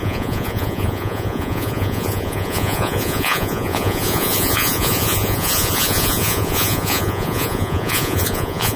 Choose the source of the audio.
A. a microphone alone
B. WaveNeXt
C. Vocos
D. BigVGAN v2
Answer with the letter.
C